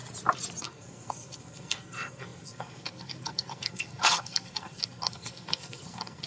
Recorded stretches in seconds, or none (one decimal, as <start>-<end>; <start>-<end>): 0.0-0.6